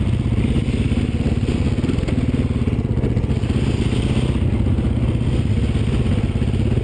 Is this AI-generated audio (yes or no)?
no